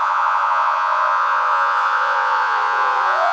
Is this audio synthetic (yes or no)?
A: yes